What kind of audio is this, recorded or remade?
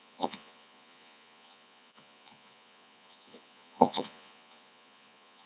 remade